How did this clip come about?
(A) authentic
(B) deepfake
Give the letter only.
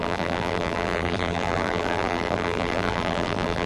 B